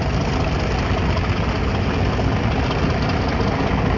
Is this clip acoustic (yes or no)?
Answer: yes